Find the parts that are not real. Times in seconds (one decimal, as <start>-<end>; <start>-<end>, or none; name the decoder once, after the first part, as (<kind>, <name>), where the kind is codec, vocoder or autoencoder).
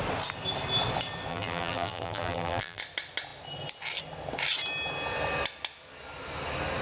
1.3-2.8 (vocoder, BigVGAN v2)